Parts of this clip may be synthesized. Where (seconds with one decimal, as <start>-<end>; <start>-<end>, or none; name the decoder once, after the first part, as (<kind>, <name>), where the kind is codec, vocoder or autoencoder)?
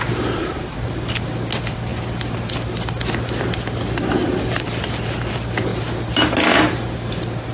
none